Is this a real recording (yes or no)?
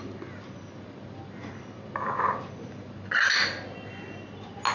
yes